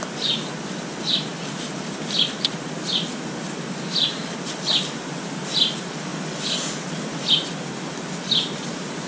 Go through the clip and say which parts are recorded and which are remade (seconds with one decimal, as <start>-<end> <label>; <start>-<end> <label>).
0.0-9.1 recorded